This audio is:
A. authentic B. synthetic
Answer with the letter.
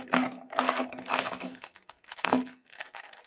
B